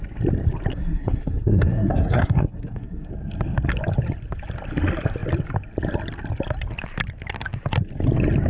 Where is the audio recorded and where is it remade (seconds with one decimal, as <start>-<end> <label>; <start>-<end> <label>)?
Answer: 0.0-0.7 recorded; 0.7-3.1 remade; 3.1-8.5 recorded